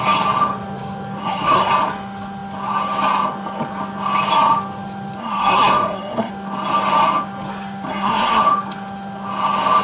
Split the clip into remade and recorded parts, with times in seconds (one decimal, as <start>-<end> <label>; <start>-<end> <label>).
0.0-1.2 recorded; 1.2-1.7 remade; 1.7-5.2 recorded; 5.2-6.3 remade; 6.3-7.9 recorded; 7.9-8.4 remade; 8.4-9.8 recorded